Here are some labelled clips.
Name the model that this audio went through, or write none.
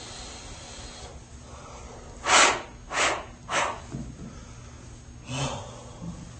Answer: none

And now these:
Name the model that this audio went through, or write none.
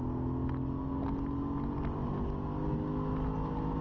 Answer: none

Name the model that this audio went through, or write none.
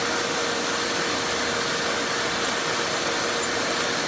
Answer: none